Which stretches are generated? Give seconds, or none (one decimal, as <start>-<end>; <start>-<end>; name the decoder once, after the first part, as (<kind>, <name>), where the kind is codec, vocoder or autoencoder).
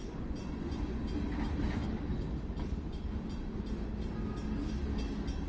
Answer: 0.0-1.0 (vocoder, Vocos)